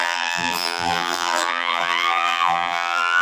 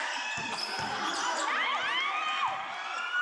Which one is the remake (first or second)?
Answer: first